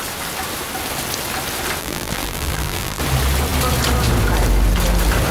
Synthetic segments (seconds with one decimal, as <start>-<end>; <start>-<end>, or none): 1.8-3.0